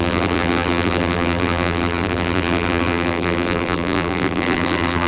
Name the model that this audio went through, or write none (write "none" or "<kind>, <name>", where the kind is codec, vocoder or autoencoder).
vocoder, BigVGAN v2